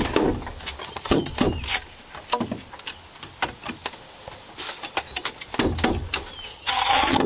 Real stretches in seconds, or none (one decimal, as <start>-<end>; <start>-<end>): 0.0-0.8; 1.3-6.5